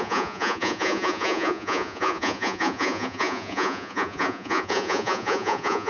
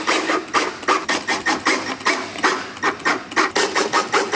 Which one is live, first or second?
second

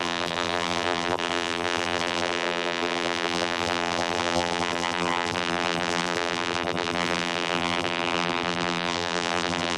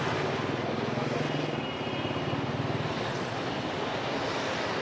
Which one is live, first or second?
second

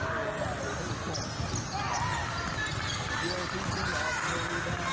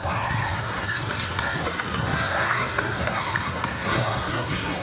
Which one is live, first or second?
first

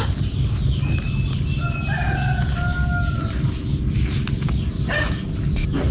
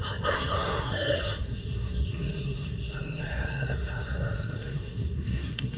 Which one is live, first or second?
first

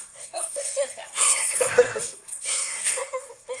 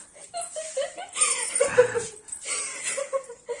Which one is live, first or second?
second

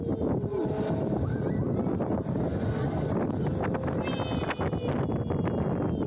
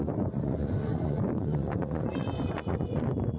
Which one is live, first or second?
first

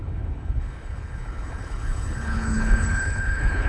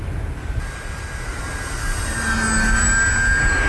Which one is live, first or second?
second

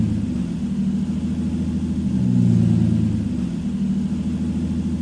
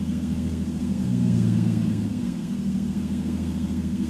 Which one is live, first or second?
first